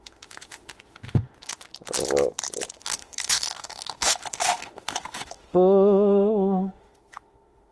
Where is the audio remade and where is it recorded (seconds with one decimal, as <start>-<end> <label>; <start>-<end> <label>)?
0.0-1.7 remade; 1.7-2.7 recorded; 2.7-7.7 remade